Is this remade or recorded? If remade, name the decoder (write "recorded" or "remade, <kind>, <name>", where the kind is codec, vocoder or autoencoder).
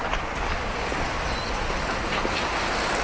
recorded